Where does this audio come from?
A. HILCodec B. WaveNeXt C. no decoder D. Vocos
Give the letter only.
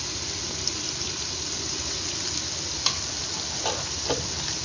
C